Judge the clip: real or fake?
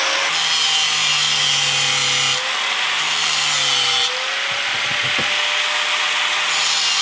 real